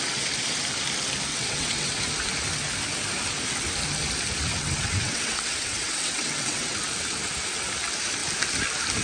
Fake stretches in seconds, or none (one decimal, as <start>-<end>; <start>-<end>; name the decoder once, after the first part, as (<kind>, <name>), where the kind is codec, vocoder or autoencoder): 1.3-2.0 (vocoder, WaveNeXt); 4.5-6.8